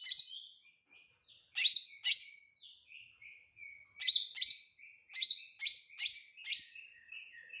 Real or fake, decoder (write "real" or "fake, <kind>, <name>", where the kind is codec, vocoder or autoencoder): real